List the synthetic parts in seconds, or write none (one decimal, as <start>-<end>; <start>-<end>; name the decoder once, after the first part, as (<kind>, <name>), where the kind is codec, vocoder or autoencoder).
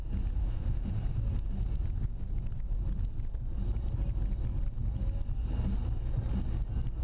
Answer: 0.4-0.9 (autoencoder, DAC-VAE)